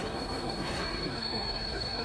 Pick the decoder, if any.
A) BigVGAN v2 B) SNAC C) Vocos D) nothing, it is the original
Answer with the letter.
B